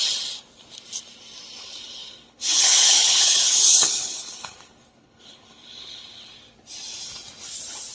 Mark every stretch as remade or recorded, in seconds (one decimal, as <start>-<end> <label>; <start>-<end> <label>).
0.0-1.6 recorded; 1.6-6.3 remade; 6.3-7.9 recorded